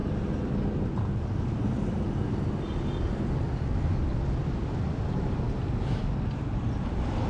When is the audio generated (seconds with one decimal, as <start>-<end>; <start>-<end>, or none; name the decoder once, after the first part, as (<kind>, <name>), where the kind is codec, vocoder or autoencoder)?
none